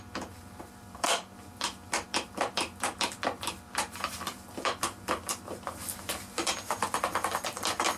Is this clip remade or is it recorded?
remade